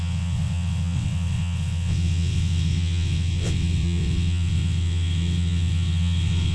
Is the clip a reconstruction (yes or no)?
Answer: yes